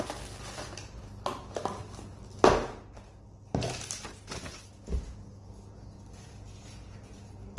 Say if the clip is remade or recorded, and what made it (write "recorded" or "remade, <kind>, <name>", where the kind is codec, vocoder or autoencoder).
recorded